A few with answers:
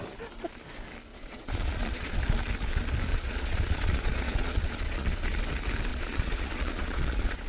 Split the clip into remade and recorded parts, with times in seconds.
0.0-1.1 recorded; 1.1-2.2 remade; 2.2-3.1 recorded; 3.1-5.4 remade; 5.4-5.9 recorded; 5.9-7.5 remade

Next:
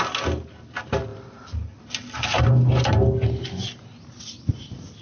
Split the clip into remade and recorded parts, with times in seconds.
0.0-5.0 recorded

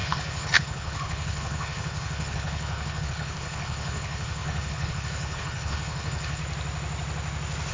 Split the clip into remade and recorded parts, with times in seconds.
0.0-6.4 remade; 6.4-7.7 recorded

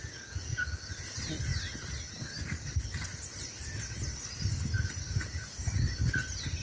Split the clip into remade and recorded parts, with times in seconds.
0.0-0.5 recorded; 0.5-1.0 remade; 1.0-6.6 recorded

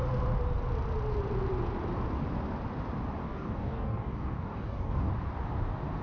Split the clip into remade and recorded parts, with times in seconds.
0.0-3.2 recorded; 3.2-5.1 remade; 5.1-6.0 recorded

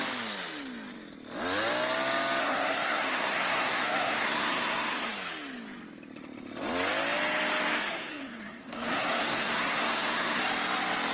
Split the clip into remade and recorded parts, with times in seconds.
0.0-2.4 recorded; 2.4-5.1 remade; 5.1-7.7 recorded; 7.7-10.4 remade; 10.4-11.1 recorded